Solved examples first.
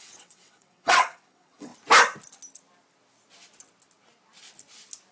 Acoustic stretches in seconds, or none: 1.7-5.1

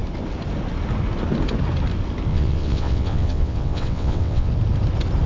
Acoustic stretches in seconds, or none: 0.0-2.3; 4.5-5.3

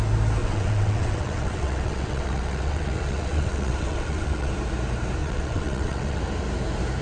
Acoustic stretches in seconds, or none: 0.0-0.4; 4.5-5.2; 6.2-7.0

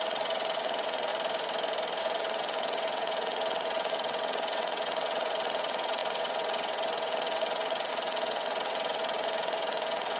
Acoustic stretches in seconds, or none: 1.1-2.0

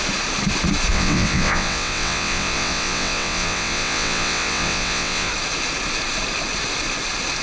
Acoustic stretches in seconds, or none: 0.0-0.9; 5.3-7.4

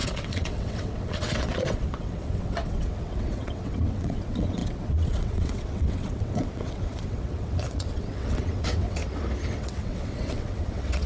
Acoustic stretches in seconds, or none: 9.0-9.5